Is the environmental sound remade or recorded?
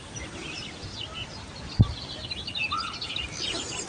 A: recorded